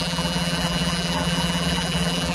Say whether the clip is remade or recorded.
remade